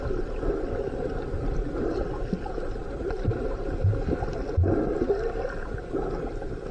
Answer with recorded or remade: recorded